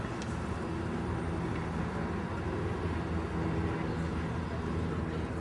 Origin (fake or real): real